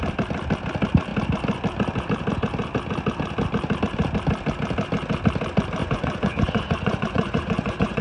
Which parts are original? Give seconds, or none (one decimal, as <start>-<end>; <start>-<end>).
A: 0.0-5.8